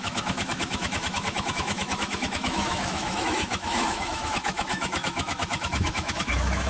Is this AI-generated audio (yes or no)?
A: yes